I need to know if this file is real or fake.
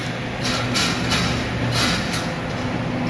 real